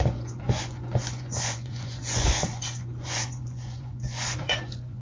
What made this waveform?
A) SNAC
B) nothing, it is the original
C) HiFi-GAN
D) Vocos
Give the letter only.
D